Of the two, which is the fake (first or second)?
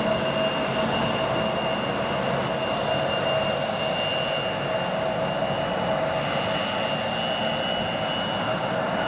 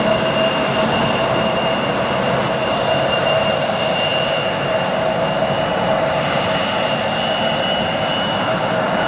second